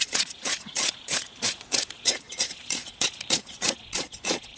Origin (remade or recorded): remade